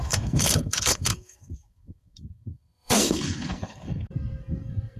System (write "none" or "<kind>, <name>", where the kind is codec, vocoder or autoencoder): codec, SNAC